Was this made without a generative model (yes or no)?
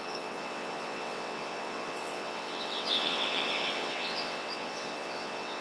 no